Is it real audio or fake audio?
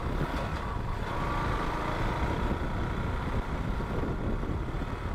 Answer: real